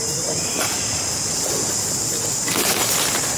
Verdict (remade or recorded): recorded